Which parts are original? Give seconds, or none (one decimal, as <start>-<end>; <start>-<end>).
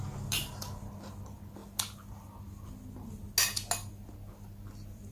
0.0-5.1